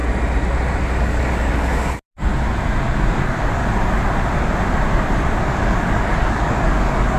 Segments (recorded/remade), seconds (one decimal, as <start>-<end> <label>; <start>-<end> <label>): 0.0-0.8 recorded; 0.8-2.3 remade; 2.3-3.1 recorded; 3.1-3.6 remade; 3.6-5.4 recorded; 5.4-7.2 remade